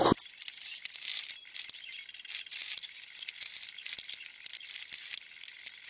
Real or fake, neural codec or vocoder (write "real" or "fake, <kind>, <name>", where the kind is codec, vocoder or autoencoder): real